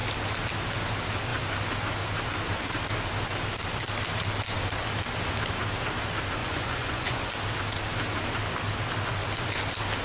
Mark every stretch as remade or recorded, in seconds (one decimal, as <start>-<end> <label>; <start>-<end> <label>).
0.0-6.4 recorded; 6.4-7.3 remade; 7.3-10.0 recorded